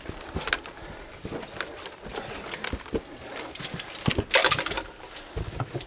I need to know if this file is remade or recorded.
recorded